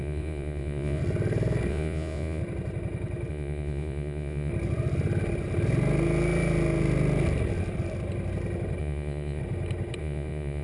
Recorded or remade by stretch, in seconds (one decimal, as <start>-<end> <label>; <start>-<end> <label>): 0.0-1.0 remade; 1.0-1.7 recorded; 1.7-2.4 remade; 2.4-3.3 recorded; 3.3-4.5 remade; 4.5-8.8 recorded; 8.8-9.4 remade; 9.4-10.0 recorded; 10.0-10.6 remade